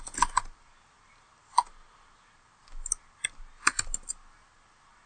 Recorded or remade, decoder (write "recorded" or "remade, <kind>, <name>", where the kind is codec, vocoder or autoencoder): recorded